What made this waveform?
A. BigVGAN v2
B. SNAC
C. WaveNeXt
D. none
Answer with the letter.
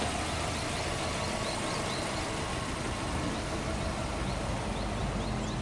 D